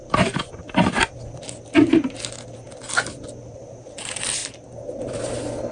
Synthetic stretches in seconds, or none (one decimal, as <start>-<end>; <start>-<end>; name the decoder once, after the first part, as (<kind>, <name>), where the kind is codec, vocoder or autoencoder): none